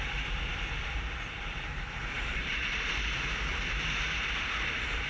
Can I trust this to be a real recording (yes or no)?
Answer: no